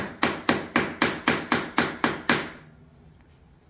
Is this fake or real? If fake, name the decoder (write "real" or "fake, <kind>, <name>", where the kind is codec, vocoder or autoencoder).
real